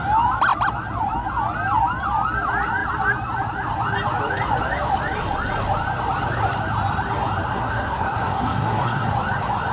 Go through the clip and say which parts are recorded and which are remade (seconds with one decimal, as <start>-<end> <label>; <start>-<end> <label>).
0.0-7.5 recorded; 7.5-9.1 remade; 9.1-9.7 recorded